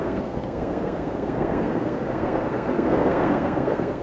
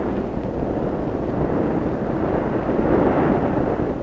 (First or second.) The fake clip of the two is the first